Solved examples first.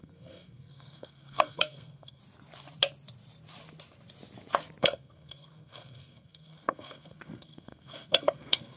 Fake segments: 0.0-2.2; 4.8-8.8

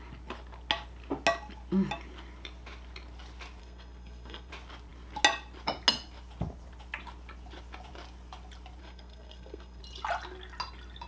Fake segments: 3.6-4.5; 8.8-9.8

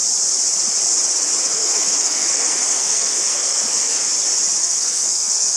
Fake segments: 1.5-4.0; 4.6-5.6

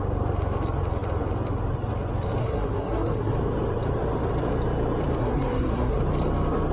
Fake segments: 2.4-3.3; 5.2-6.0

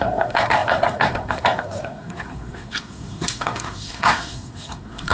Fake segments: 0.0-5.1

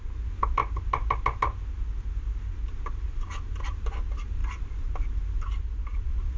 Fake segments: none

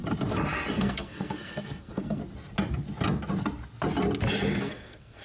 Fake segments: 0.7-2.2; 4.6-5.2